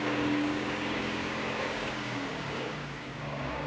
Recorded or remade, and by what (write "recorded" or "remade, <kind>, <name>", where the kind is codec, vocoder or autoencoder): remade, codec, DAC